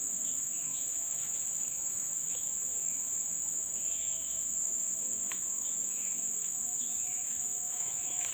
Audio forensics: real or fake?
fake